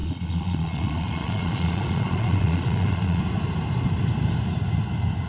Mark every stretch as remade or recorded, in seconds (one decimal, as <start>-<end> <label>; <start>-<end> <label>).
0.0-3.2 remade; 3.2-5.3 recorded